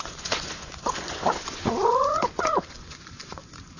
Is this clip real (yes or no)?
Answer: no